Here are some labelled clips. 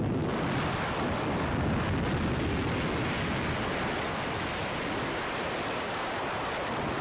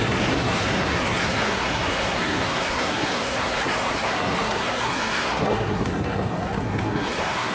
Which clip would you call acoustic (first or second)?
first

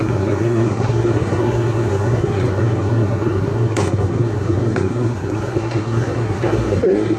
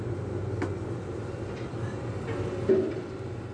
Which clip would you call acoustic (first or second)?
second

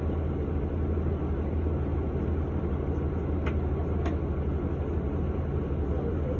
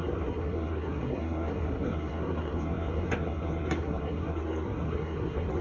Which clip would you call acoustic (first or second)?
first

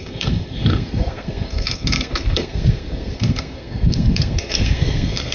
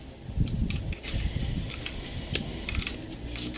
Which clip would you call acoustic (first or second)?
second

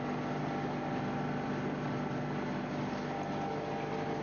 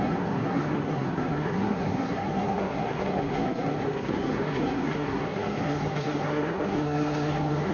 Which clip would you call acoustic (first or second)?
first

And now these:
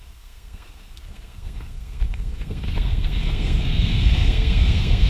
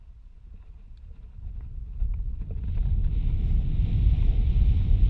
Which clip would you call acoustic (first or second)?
second